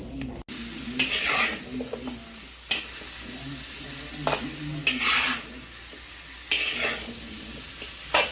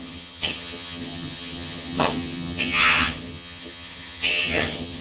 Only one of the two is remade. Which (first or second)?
second